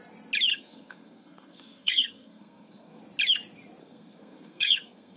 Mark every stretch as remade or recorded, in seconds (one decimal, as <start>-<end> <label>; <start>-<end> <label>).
0.0-0.5 recorded; 0.5-3.0 remade; 3.0-3.8 recorded; 3.8-5.2 remade